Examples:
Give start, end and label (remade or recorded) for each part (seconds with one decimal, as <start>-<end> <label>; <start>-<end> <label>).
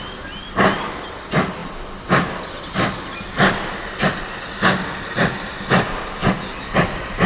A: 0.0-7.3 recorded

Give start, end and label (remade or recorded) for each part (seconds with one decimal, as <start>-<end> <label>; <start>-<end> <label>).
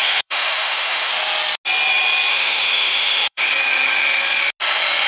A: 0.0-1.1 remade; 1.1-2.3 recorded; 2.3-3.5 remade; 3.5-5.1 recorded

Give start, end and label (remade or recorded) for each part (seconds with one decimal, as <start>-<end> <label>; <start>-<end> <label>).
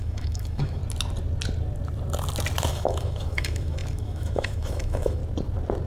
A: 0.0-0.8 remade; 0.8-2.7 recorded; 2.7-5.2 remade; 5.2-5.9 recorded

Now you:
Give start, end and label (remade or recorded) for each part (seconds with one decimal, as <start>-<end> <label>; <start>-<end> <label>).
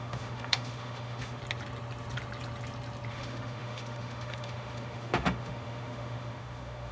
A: 0.0-1.4 remade; 1.4-3.1 recorded; 3.1-6.9 remade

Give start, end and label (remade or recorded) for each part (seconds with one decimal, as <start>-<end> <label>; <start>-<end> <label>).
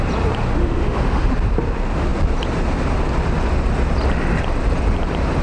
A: 0.0-0.6 recorded; 0.6-1.3 remade; 1.3-5.4 recorded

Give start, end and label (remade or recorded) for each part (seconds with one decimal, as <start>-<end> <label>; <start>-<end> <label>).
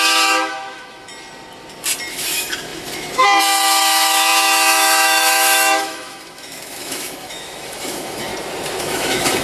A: 0.0-1.1 remade; 1.1-2.1 recorded; 2.1-8.3 remade; 8.3-8.8 recorded; 8.8-9.4 remade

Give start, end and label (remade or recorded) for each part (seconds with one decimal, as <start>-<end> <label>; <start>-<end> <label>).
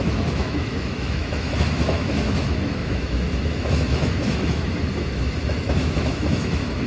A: 0.0-6.9 remade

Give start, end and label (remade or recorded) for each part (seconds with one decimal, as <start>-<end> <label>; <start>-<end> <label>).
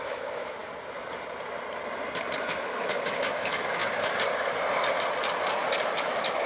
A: 0.0-0.6 remade; 0.6-2.4 recorded; 2.4-3.8 remade; 3.8-6.0 recorded; 6.0-6.5 remade